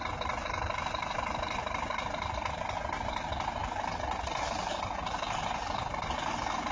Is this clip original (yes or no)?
yes